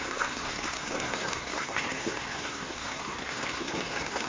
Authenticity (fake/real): fake